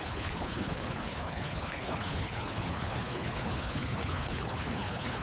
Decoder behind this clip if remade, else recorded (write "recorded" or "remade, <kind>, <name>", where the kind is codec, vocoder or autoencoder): remade, codec, HILCodec